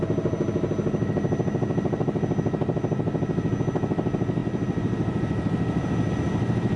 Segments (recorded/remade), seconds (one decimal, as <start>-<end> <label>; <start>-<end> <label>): 0.0-6.8 recorded